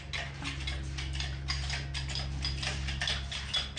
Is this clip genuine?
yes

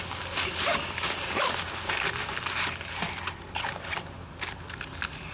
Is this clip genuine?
yes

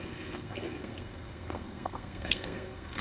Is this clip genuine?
no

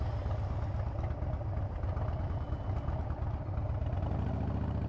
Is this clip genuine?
yes